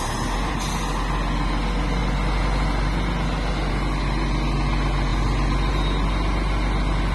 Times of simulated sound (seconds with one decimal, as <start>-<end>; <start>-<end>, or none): none